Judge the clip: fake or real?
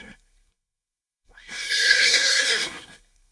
fake